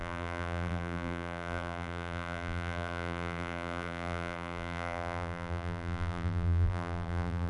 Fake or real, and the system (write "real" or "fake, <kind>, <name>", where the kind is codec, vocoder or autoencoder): fake, vocoder, BigVGAN v2